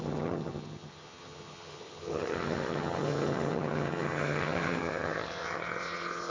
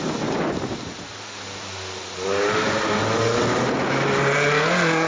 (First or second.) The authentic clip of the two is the second